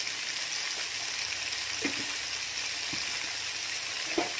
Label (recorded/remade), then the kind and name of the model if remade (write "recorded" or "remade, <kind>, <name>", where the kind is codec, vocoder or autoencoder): recorded